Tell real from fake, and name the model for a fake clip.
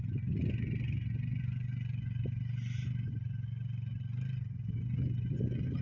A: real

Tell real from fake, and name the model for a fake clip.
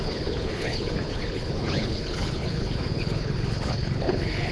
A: fake, codec, HILCodec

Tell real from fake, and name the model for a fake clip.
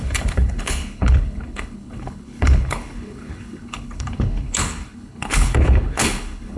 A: fake, codec, HILCodec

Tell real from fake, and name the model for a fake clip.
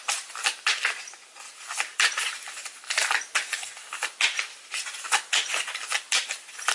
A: real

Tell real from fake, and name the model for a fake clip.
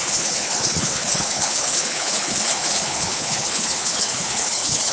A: fake, codec, HILCodec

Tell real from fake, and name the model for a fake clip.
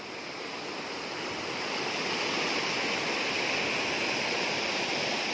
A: real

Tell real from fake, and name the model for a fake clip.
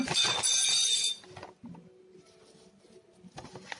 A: real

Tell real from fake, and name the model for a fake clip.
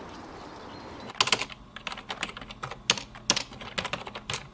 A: real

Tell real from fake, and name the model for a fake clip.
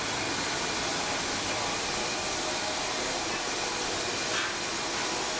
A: real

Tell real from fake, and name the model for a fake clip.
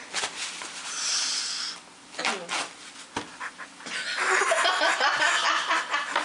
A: real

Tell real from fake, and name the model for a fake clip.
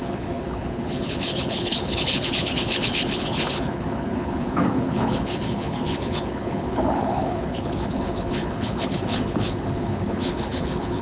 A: fake, codec, HILCodec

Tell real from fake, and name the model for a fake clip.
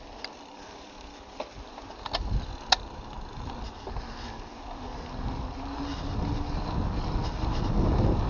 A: real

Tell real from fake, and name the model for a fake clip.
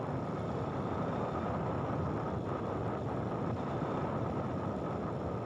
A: real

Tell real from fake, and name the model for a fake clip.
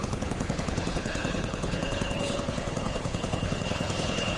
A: fake, codec, HILCodec